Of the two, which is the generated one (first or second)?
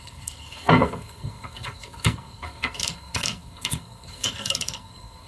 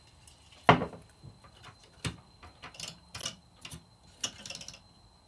first